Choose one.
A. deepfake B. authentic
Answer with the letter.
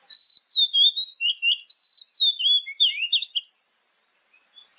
B